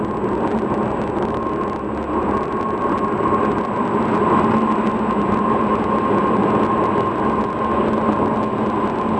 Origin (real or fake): real